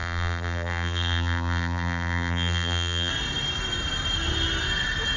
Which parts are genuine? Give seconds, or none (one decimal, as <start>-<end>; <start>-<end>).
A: 3.1-5.2